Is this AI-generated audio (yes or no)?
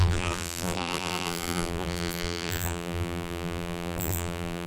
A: yes